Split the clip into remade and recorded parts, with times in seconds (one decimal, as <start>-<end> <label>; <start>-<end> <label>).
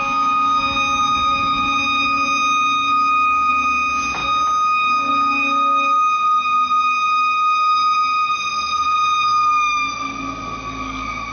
0.0-11.3 recorded